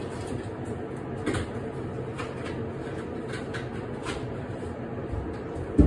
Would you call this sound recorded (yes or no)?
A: yes